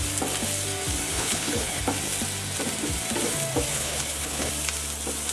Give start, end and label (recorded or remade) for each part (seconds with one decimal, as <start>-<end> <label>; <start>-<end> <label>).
0.0-1.1 recorded; 1.1-1.8 remade; 1.8-3.7 recorded; 3.7-4.5 remade; 4.5-5.3 recorded

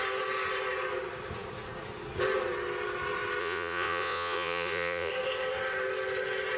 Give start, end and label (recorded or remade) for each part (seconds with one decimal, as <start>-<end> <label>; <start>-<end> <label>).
0.0-3.4 recorded; 3.4-5.1 remade; 5.1-6.6 recorded

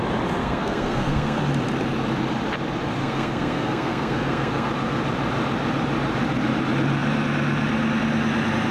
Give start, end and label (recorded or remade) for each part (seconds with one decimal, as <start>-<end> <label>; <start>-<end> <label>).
0.0-0.4 recorded; 0.4-1.4 remade; 1.4-3.0 recorded; 3.0-4.7 remade; 4.7-8.7 recorded

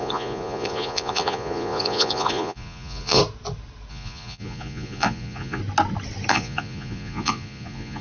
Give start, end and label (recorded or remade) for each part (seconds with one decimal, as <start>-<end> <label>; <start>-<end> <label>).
0.0-3.2 remade; 3.2-3.9 recorded; 3.9-5.6 remade; 5.6-6.3 recorded; 6.3-8.0 remade

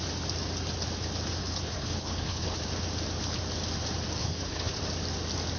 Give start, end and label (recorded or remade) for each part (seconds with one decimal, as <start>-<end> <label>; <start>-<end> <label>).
0.0-1.4 recorded; 1.4-2.6 remade; 2.6-4.2 recorded; 4.2-4.8 remade; 4.8-5.6 recorded

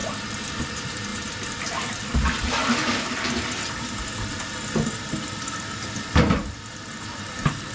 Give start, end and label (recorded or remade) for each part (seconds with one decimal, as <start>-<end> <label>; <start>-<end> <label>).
0.0-2.6 remade; 2.6-7.2 recorded; 7.2-7.7 remade

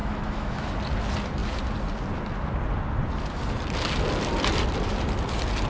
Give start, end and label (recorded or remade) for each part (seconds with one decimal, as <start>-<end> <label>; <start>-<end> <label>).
0.0-0.7 remade; 0.7-5.7 recorded

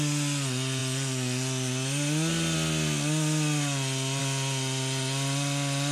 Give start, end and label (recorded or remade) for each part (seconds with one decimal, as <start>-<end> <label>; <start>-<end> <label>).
0.0-5.9 recorded